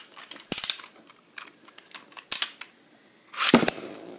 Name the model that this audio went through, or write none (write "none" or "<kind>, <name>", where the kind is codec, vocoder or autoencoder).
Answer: vocoder, BigVGAN v2